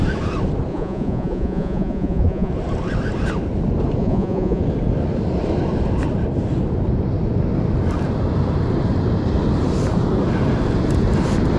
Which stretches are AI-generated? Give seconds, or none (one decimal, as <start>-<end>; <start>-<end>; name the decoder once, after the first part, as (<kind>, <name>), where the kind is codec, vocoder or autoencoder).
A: 0.7-2.5 (vocoder, Vocos); 4.0-4.6